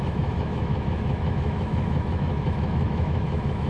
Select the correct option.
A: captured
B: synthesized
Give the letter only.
B